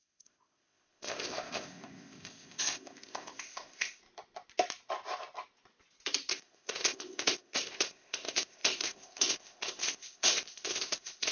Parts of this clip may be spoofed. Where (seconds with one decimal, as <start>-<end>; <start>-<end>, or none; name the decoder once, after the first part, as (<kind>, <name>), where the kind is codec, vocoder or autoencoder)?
0.0-4.0 (codec, ZipCodec); 6.3-11.3